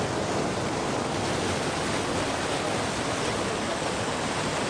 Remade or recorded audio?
recorded